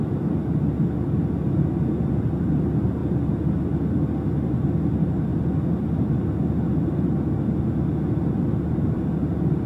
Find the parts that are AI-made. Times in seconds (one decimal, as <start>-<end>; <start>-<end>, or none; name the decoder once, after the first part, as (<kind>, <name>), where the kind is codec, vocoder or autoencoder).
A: none